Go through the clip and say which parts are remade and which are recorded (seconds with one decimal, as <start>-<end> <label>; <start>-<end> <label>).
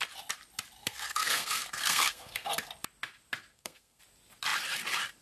0.0-0.8 recorded; 0.8-2.5 remade; 2.5-3.5 recorded; 3.5-4.0 remade; 4.0-5.2 recorded